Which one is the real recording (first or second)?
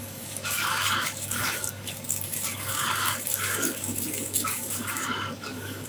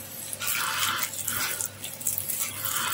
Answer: second